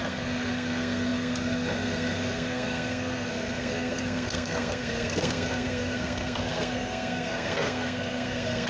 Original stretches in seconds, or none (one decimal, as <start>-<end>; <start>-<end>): none